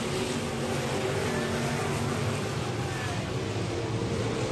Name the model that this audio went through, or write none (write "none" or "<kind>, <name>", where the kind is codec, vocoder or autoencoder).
none